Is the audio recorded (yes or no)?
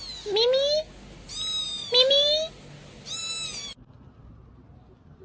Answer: yes